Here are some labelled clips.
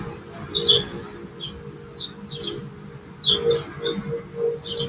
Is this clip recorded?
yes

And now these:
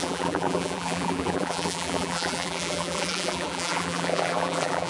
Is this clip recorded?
no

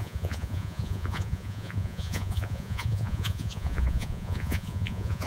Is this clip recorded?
no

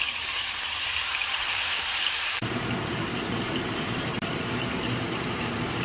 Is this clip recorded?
no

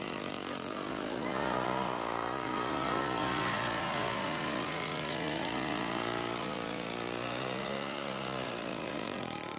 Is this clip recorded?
no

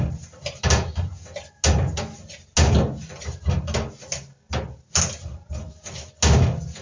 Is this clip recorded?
yes